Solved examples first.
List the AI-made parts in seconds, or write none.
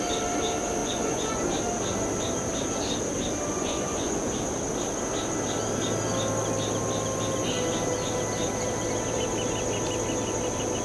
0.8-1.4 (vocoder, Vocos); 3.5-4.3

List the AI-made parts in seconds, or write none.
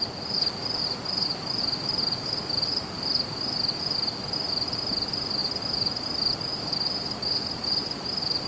none